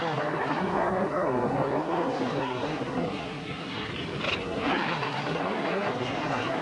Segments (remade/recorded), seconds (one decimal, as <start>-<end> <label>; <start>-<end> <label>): 0.0-3.9 remade; 3.9-4.4 recorded; 4.4-6.6 remade